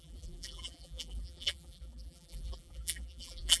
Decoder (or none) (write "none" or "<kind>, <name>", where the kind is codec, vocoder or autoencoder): vocoder, BigVGAN v2